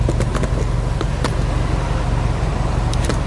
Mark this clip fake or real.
real